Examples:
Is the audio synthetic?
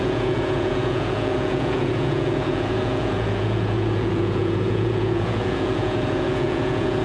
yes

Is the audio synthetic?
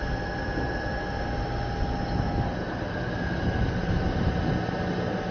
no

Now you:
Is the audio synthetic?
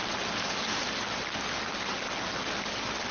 no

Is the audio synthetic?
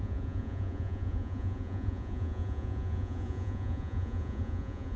yes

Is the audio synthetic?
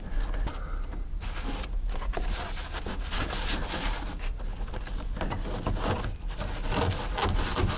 no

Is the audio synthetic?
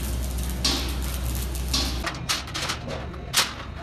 no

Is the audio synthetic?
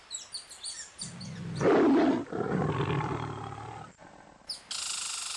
no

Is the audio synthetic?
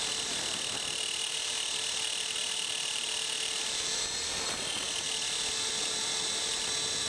no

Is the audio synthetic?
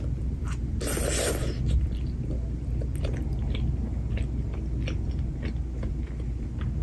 no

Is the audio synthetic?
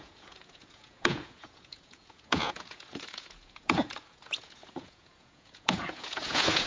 yes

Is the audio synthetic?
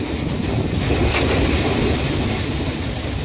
no